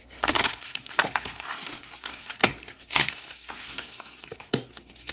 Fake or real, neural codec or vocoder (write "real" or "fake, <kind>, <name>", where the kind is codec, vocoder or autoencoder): fake, codec, SNAC